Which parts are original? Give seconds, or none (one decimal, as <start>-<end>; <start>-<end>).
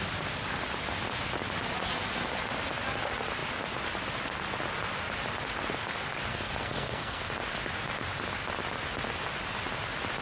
0.0-6.3; 7.3-10.2